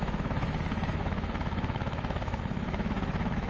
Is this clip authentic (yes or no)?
no